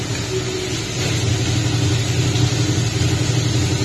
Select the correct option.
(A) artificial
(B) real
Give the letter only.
B